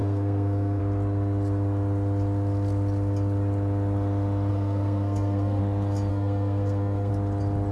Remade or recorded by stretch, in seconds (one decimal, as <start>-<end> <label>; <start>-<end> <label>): 0.0-0.8 remade; 0.8-4.5 recorded; 4.5-5.6 remade; 5.6-6.1 recorded; 6.1-7.1 remade; 7.1-7.7 recorded